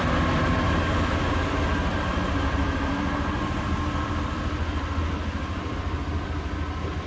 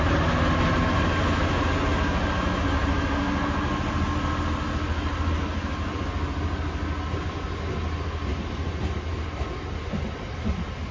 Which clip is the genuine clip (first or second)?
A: second